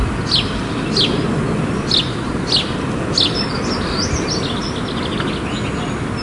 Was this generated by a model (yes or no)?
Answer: no